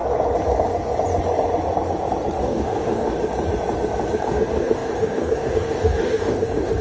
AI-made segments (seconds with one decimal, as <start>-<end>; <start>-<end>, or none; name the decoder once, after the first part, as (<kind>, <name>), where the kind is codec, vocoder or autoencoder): 2.4-3.1 (codec, DAC); 4.2-6.8